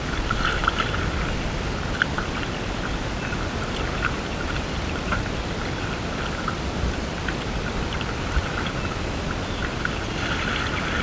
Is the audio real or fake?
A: real